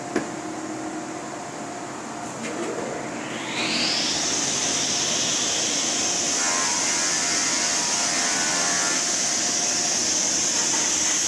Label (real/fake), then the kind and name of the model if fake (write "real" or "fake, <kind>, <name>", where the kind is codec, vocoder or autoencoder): real